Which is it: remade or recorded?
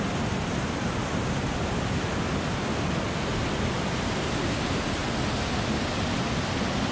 recorded